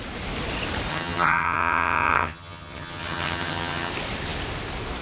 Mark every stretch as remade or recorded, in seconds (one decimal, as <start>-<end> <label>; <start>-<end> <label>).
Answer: 0.0-0.9 recorded; 0.9-3.9 remade; 3.9-5.0 recorded